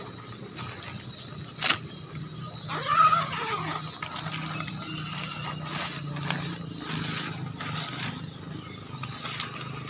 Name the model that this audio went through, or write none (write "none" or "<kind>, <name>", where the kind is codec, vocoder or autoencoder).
none